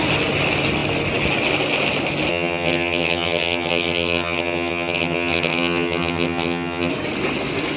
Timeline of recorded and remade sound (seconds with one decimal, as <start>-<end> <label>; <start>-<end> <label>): 0.0-2.3 recorded; 2.3-6.9 remade; 6.9-7.8 recorded